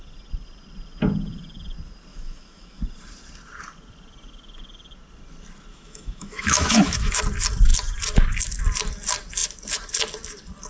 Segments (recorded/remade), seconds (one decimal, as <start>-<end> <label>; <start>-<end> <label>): 0.0-2.1 recorded; 2.1-2.8 remade; 2.8-5.7 recorded; 5.7-7.2 remade; 7.2-10.7 recorded